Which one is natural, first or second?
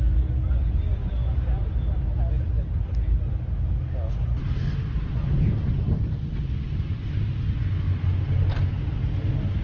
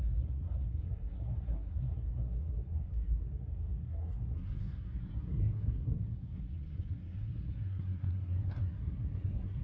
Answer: first